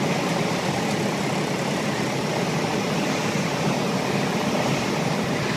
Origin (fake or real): fake